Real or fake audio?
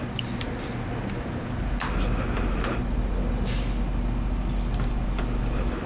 real